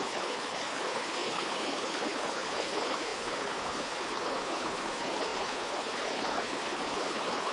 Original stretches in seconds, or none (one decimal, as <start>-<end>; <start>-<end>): none